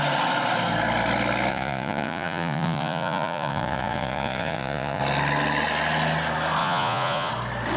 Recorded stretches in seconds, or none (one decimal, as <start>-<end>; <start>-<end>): 0.0-1.5; 5.0-6.6; 7.3-7.8